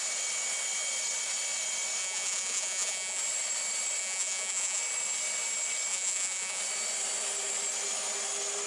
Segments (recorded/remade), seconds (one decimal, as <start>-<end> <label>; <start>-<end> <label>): 0.0-2.0 recorded; 2.0-3.2 remade; 3.2-4.0 recorded; 4.0-4.8 remade; 4.8-5.9 recorded; 5.9-6.6 remade; 6.6-8.7 recorded